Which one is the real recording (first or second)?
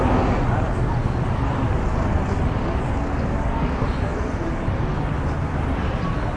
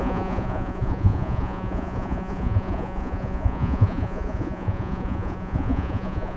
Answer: first